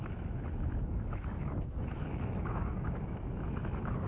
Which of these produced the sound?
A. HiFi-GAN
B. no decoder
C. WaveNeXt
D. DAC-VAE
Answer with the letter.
D